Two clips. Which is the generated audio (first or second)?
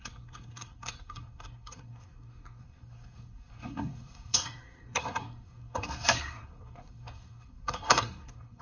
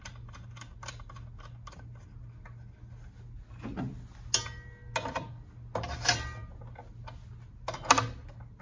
first